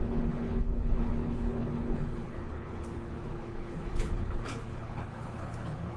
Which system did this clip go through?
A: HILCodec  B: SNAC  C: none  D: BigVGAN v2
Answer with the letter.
A